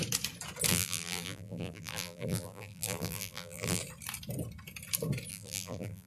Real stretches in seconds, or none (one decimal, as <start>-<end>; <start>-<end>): 0.0-0.7; 3.8-5.3